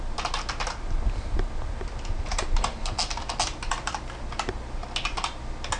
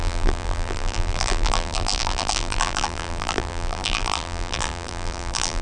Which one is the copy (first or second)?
second